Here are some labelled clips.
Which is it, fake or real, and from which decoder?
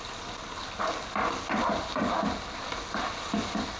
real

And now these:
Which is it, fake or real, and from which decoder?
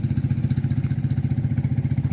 real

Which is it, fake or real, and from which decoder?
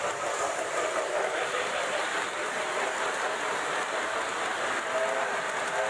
real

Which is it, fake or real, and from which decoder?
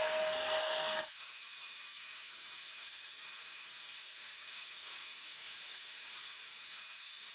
fake, codec, SNAC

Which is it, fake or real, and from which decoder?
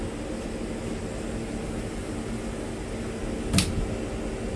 real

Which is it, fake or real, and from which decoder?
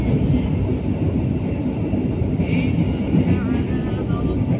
real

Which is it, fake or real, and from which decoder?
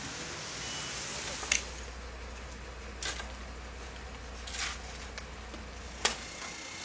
real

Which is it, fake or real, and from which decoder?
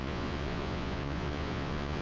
fake, vocoder, Vocos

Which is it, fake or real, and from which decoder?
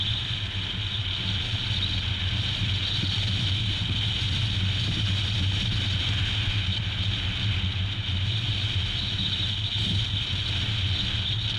real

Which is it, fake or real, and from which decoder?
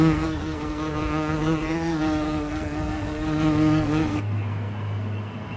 fake, codec, SNAC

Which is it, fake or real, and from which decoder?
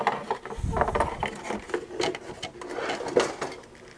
real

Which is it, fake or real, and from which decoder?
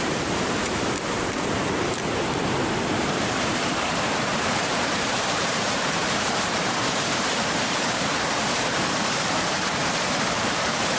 fake, vocoder, BigVGAN v2